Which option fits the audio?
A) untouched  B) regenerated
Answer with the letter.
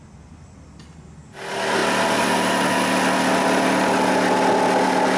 A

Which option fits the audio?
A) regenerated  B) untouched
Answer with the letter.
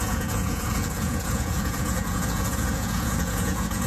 A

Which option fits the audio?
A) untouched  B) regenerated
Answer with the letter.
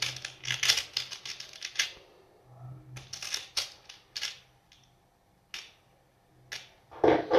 A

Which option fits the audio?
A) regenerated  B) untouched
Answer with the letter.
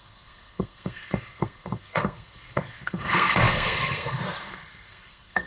A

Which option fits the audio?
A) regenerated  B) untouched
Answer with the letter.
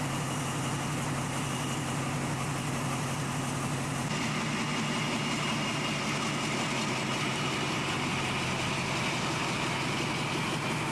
B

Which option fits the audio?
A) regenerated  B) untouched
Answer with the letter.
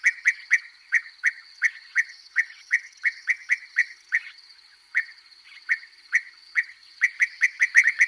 A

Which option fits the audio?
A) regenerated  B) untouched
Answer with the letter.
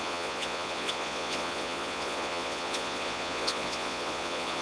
A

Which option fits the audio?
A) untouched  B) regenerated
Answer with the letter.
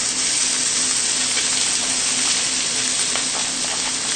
A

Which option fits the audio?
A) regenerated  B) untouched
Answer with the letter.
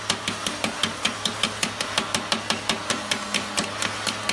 B